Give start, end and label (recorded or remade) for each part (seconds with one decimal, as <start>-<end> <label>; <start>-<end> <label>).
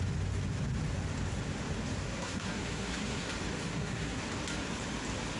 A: 0.0-2.0 recorded; 2.0-3.3 remade; 3.3-3.7 recorded; 3.7-4.2 remade; 4.2-5.4 recorded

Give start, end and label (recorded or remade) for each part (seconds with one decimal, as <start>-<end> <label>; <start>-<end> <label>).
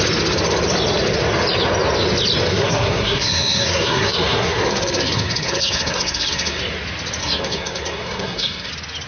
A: 0.0-2.5 recorded; 2.5-6.6 remade; 6.6-7.2 recorded; 7.2-8.7 remade; 8.7-9.1 recorded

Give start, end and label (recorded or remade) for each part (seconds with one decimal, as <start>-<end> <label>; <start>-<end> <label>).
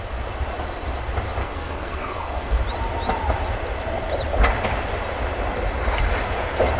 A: 0.0-1.4 recorded; 1.4-2.6 remade; 2.6-6.8 recorded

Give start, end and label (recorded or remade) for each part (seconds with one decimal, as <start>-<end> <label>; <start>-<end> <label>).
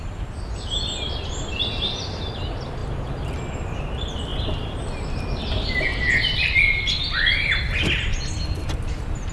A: 0.0-9.3 recorded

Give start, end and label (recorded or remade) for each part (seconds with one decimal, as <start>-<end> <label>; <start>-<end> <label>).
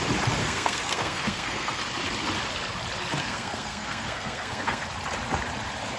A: 0.0-0.4 recorded; 0.4-1.8 remade; 1.8-3.2 recorded; 3.2-4.8 remade; 4.8-6.0 recorded